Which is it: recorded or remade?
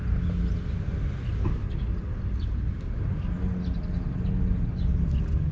recorded